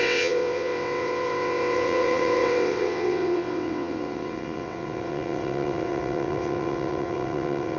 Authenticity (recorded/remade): remade